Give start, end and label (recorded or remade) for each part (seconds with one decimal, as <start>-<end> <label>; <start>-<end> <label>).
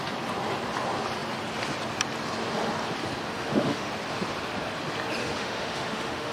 0.0-3.3 recorded; 3.3-3.9 remade; 3.9-5.2 recorded; 5.2-6.3 remade